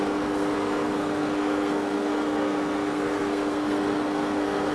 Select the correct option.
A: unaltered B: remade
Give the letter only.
B